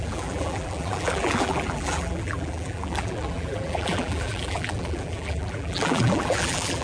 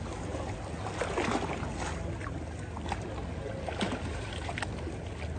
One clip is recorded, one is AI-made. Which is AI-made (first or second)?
first